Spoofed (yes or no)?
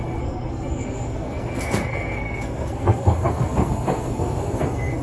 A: yes